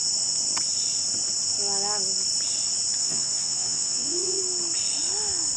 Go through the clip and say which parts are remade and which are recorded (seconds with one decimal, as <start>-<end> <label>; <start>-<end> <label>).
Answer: 0.0-3.0 recorded; 3.0-4.4 remade; 4.4-5.6 recorded